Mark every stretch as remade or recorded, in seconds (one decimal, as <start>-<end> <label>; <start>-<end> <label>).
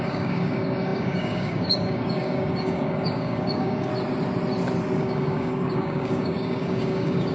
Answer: 0.0-3.9 remade; 3.9-5.0 recorded; 5.0-7.3 remade